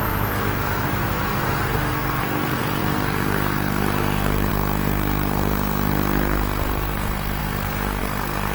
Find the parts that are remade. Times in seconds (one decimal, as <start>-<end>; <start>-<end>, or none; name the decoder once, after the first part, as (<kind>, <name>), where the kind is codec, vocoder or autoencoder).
0.0-8.5 (codec, SNAC)